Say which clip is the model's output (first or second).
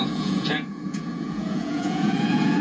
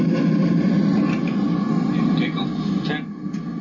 first